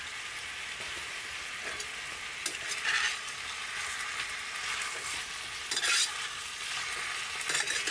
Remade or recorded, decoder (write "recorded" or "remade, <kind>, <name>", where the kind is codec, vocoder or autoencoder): recorded